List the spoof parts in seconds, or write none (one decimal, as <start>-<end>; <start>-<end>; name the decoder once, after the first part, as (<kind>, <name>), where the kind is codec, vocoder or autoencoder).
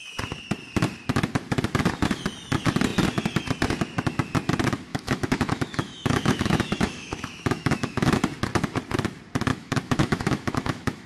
4.9-8.2 (autoencoder, DAC-VAE); 9.5-11.1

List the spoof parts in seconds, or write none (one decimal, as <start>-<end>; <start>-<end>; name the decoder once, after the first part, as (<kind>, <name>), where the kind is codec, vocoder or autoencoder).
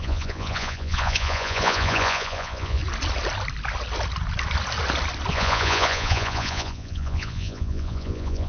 0.0-2.8 (vocoder, Vocos); 5.3-8.5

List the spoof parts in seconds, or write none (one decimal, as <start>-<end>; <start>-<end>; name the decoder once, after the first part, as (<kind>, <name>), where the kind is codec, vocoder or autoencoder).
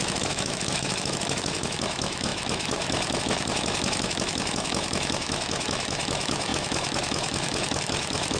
0.0-8.4 (autoencoder, DAC-VAE)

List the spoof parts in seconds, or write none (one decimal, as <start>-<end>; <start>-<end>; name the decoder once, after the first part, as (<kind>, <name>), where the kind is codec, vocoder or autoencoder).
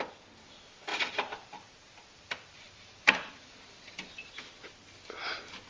0.9-4.3 (vocoder, BigVGAN v2)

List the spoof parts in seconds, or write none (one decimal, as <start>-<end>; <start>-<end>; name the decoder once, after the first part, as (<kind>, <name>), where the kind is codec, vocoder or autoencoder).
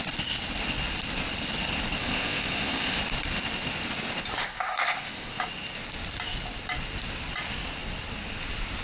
2.0-3.0 (codec, ZipCodec); 4.4-5.3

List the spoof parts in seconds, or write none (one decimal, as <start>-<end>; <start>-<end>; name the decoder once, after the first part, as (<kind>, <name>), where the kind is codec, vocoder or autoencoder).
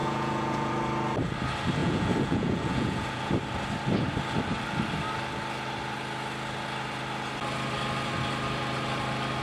0.0-0.7 (vocoder, Vocos); 1.8-3.3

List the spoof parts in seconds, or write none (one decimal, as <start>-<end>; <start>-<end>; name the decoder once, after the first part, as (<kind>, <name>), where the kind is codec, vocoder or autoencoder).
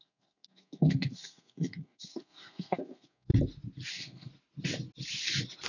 0.0-3.3 (codec, SNAC); 3.9-4.3